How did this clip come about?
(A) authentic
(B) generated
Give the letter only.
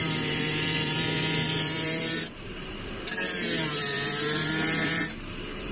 B